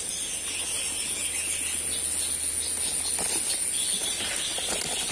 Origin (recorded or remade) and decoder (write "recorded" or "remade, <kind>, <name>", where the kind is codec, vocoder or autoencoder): recorded